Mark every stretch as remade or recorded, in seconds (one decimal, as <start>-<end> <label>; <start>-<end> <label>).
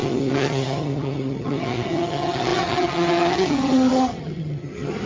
0.0-5.1 remade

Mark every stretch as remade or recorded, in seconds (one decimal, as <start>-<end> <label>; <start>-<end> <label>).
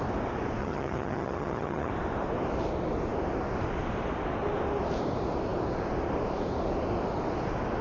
0.0-0.6 recorded; 0.6-1.9 remade; 1.9-7.8 recorded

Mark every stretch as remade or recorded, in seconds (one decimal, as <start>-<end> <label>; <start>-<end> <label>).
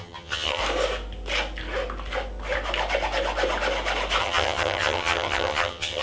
0.0-0.6 remade; 0.6-4.2 recorded; 4.2-6.0 remade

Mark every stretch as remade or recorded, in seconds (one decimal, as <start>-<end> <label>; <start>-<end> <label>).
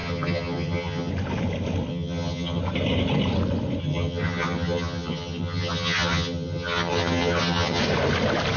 0.0-1.1 remade; 1.1-1.9 recorded; 1.9-2.6 remade; 2.6-3.8 recorded; 3.8-7.8 remade; 7.8-8.6 recorded